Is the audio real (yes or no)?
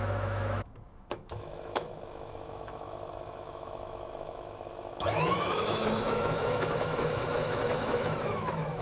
no